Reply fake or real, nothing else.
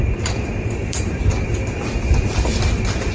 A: fake